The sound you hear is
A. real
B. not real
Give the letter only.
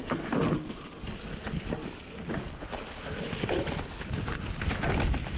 A